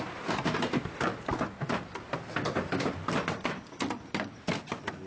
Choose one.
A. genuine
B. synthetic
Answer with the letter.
A